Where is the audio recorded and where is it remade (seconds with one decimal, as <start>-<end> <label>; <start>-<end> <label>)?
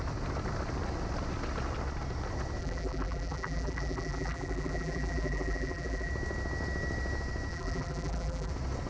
0.0-2.6 recorded; 2.6-6.1 remade; 6.1-7.5 recorded; 7.5-8.5 remade; 8.5-8.9 recorded